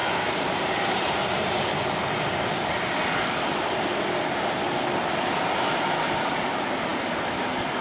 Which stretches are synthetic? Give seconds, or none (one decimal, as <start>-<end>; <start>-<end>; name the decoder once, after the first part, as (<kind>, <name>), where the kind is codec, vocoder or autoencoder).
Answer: 0.0-1.6 (vocoder, BigVGAN v2)